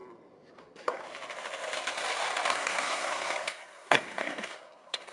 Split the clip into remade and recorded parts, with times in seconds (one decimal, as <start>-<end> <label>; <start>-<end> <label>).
0.0-0.6 recorded; 0.6-1.0 remade; 1.0-2.5 recorded; 2.5-5.1 remade